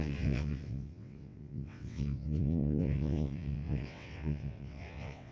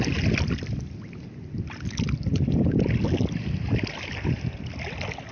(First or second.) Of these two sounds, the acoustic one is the second